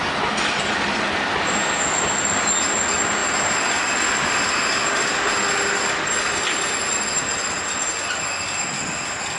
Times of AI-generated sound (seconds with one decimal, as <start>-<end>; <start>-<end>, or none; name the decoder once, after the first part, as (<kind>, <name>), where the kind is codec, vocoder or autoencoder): none